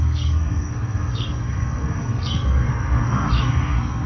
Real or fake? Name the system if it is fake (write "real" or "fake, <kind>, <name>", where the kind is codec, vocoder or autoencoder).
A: fake, codec, SNAC